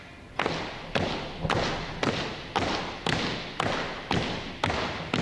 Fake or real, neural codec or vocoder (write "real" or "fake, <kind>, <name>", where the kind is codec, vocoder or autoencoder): real